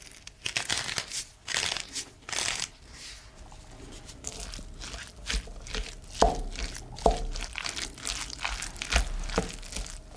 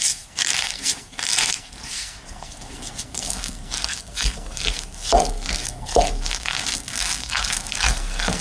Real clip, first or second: first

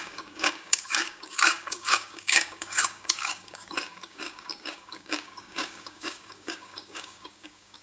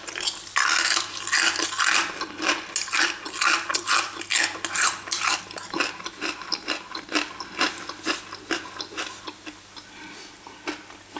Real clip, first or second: second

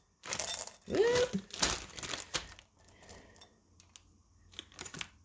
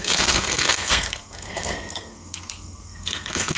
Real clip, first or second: first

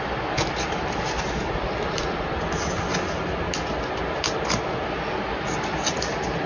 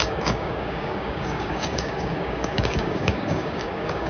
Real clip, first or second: first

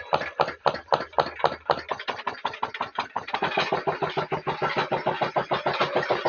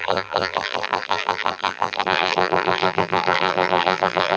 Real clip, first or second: first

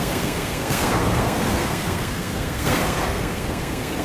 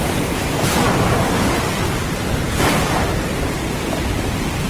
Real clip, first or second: second